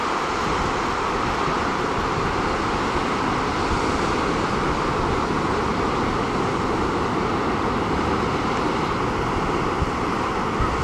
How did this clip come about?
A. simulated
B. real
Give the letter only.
B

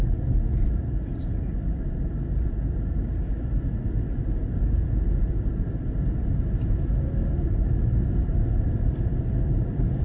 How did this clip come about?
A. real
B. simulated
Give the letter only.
B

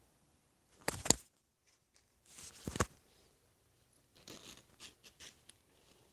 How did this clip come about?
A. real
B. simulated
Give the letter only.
A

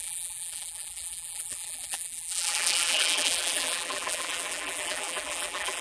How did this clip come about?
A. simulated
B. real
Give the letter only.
A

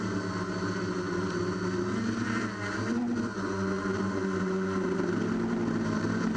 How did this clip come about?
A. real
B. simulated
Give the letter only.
A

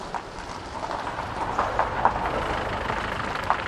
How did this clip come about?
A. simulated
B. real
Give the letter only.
B